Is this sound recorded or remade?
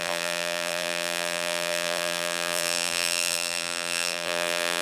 remade